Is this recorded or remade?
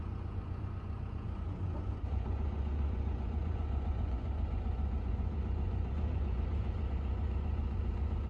remade